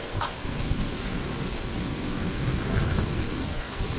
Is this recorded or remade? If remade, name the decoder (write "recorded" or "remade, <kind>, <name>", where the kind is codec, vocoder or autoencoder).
remade, codec, SNAC